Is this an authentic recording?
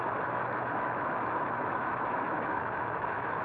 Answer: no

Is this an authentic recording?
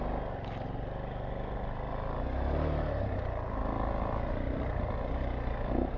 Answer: yes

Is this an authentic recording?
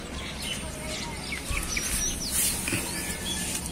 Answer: yes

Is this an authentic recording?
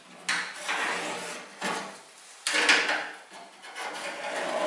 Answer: yes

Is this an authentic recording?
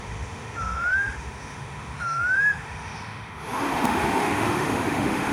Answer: no